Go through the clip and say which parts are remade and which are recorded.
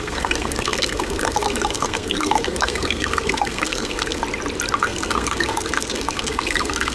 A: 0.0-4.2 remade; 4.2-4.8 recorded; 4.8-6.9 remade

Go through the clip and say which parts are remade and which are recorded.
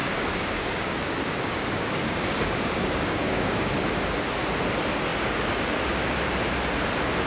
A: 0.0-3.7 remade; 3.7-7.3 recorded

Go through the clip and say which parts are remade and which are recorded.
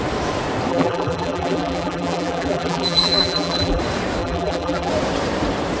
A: 0.0-0.7 recorded; 0.7-3.8 remade; 3.8-4.2 recorded; 4.2-4.9 remade; 4.9-5.8 recorded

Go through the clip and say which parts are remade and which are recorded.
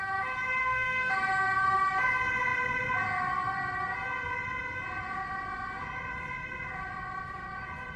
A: 0.0-0.6 recorded; 0.6-1.1 remade; 1.1-8.0 recorded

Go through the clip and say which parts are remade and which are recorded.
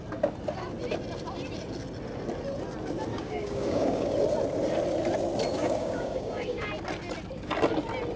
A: 0.0-3.1 recorded; 3.1-4.1 remade; 4.1-5.5 recorded; 5.5-6.7 remade; 6.7-8.2 recorded